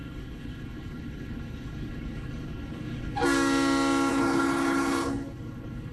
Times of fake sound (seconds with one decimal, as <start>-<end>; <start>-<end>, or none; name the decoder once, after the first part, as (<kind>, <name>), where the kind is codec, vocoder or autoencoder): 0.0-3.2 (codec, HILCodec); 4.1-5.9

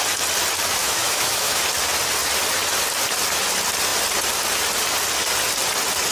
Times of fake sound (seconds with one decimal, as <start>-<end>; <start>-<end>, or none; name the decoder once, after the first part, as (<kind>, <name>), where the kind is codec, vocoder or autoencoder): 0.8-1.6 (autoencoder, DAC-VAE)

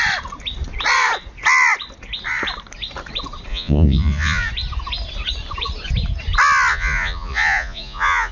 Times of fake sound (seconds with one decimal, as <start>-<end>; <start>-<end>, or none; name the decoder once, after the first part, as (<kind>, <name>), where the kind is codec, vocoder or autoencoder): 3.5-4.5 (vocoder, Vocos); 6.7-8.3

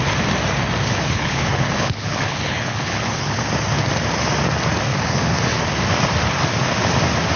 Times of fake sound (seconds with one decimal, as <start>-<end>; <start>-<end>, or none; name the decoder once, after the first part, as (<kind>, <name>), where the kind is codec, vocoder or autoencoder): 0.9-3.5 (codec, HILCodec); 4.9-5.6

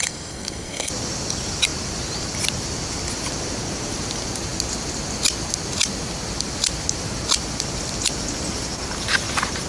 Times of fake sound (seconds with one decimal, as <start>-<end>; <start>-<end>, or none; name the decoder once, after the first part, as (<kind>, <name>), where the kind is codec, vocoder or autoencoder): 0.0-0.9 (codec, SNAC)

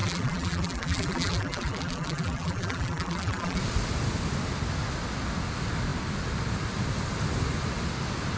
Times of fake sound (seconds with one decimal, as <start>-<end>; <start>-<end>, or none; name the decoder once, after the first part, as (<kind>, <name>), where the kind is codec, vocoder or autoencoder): 0.0-3.6 (vocoder, BigVGAN v2)